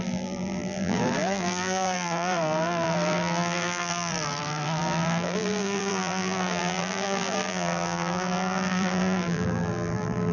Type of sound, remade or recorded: remade